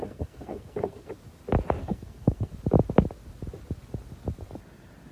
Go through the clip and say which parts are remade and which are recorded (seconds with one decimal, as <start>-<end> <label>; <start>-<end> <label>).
0.0-1.1 remade; 1.1-1.8 recorded; 1.8-2.5 remade; 2.5-5.1 recorded